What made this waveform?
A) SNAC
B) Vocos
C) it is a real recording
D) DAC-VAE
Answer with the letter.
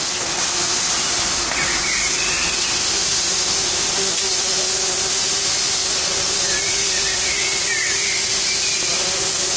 C